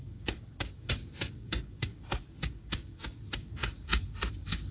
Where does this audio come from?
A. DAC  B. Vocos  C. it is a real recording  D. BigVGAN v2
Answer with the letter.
A